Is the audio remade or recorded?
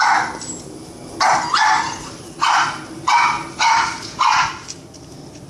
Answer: recorded